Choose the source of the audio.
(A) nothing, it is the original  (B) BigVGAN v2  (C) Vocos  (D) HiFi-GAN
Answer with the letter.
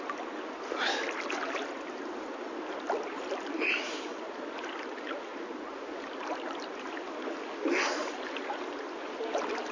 A